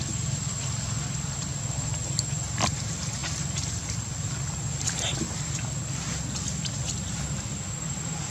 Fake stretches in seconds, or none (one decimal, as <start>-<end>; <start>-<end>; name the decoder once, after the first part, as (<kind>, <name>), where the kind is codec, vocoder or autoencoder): none